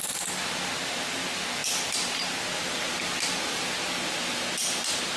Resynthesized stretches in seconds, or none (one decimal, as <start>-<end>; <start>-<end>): none